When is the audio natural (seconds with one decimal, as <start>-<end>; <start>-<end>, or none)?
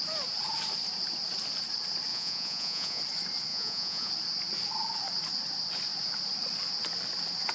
0.0-2.1; 3.0-3.5; 4.1-7.5